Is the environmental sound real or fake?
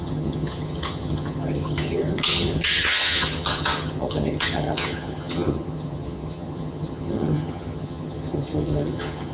fake